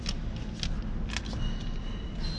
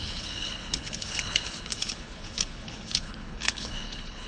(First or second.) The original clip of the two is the first